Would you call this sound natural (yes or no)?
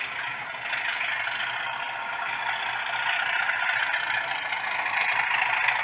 yes